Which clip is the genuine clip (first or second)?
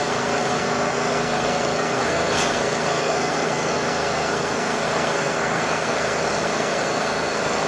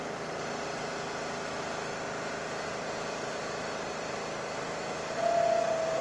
second